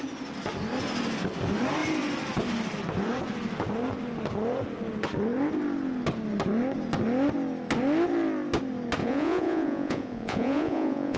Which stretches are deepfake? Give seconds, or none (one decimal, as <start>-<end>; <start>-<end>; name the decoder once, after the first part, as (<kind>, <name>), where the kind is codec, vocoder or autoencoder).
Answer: 9.0-11.2 (vocoder, Vocos)